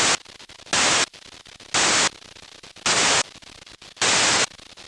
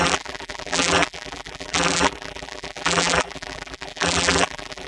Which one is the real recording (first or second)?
first